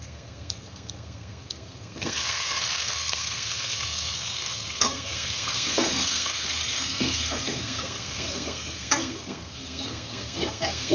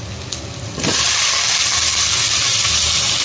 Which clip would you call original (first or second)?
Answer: second